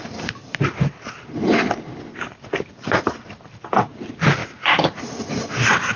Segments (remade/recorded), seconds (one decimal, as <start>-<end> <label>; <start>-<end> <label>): 0.0-0.4 recorded; 0.4-4.0 remade; 4.0-4.4 recorded; 4.4-5.5 remade; 5.5-6.0 recorded